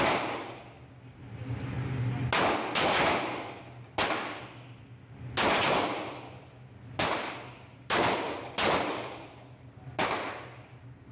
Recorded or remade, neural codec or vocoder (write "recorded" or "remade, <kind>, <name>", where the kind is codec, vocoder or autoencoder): recorded